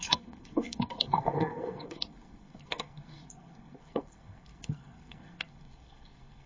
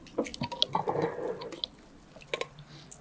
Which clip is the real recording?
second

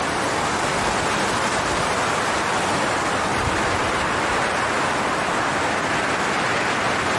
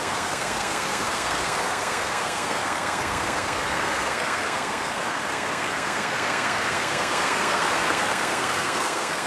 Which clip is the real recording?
first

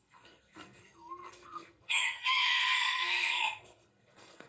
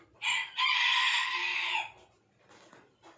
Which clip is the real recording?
second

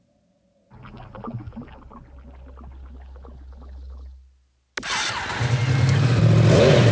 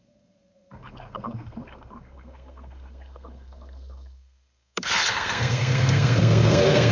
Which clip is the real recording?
first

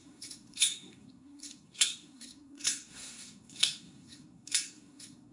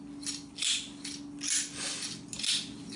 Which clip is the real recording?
second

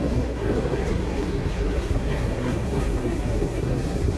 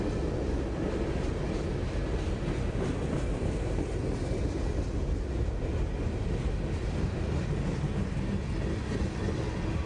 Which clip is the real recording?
second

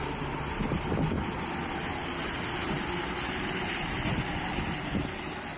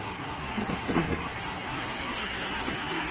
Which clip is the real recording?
first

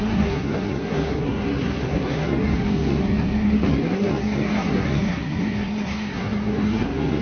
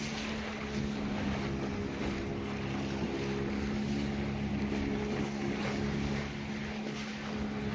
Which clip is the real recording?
second